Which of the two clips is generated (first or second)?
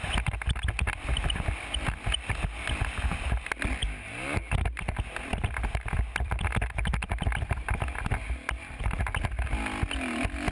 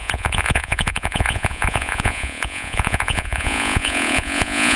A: second